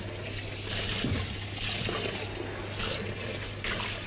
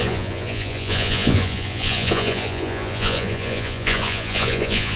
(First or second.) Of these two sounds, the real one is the first